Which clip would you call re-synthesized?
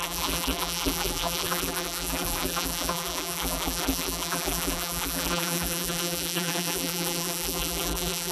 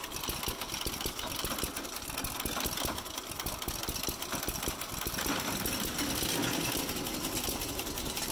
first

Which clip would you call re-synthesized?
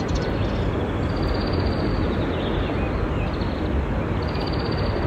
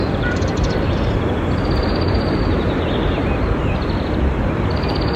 second